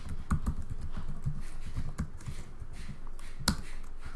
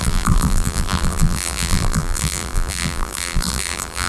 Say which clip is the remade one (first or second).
second